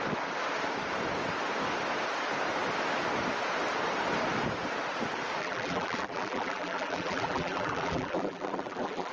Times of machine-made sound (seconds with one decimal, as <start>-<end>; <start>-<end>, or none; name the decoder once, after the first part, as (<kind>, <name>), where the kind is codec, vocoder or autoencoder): 5.4-9.1 (vocoder, BigVGAN v2)